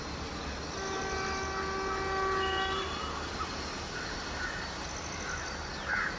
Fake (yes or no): no